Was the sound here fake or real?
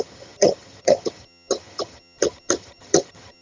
fake